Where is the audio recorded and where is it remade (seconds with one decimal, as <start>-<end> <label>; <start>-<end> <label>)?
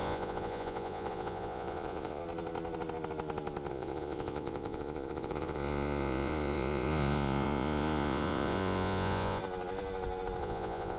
0.0-2.2 remade; 2.2-3.7 recorded; 3.7-9.4 remade; 9.4-10.4 recorded; 10.4-11.0 remade